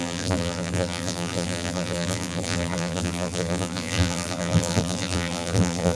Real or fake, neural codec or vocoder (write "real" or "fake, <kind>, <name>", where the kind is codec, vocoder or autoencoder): fake, vocoder, BigVGAN v2